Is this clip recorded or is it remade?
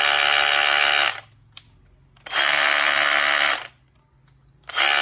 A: recorded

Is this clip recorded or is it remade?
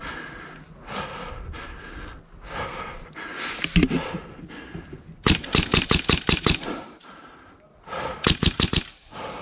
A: recorded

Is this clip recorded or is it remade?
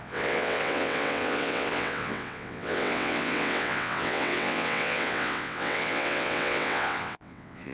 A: remade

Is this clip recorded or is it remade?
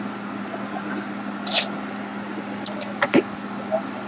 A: recorded